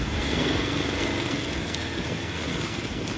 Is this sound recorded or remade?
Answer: remade